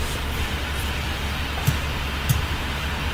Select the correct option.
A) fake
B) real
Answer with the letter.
B